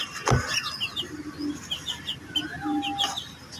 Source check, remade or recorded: recorded